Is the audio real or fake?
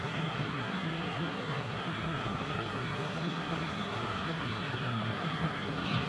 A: fake